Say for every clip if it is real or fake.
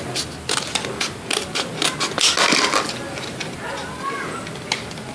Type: real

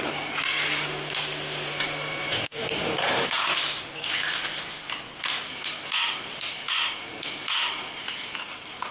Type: real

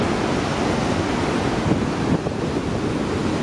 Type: real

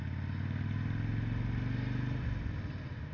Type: real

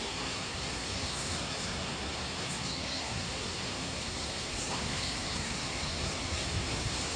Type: fake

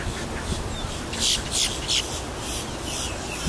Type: real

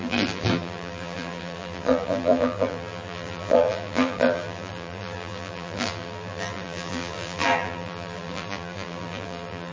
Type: fake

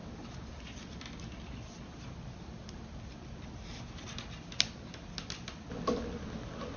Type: real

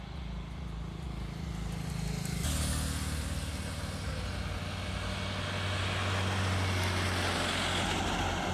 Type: real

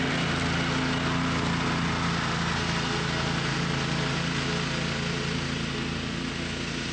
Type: real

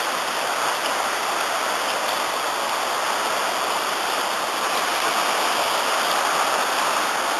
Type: real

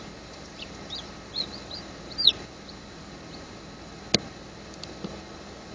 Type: real